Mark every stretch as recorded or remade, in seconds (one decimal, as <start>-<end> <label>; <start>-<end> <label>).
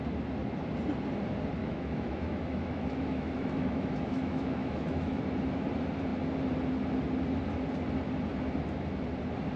0.0-1.6 recorded; 1.6-5.2 remade; 5.2-9.6 recorded